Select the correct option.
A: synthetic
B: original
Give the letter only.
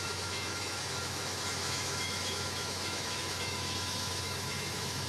A